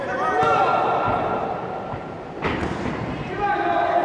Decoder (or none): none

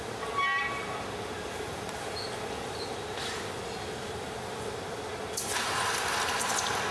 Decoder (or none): none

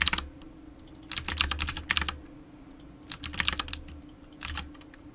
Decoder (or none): none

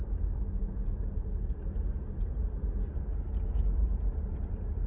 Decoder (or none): none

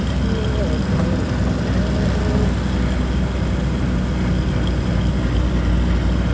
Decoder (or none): none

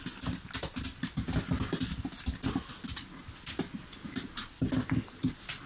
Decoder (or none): none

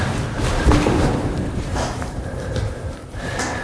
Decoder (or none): vocoder, BigVGAN v2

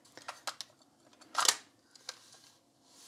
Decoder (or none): none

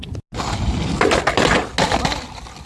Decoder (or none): none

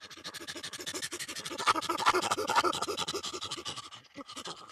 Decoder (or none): none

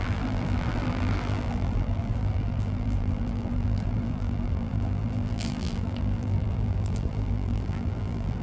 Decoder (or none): vocoder, BigVGAN v2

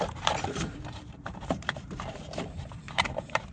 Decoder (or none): vocoder, BigVGAN v2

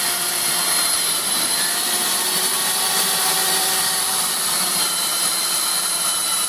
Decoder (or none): vocoder, BigVGAN v2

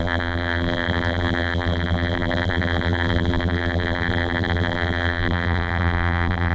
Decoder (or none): vocoder, BigVGAN v2